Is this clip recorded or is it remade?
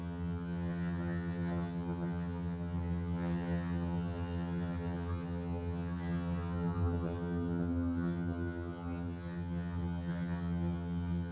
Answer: remade